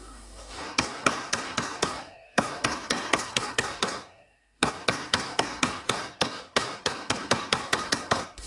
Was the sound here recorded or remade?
remade